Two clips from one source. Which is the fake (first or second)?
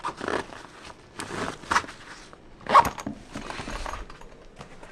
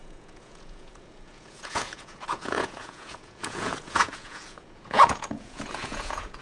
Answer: second